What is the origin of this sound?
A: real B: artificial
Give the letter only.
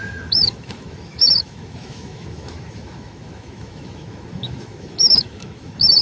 B